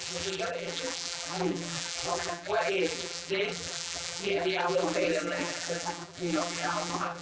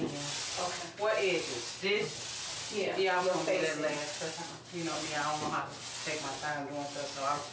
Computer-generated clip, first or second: first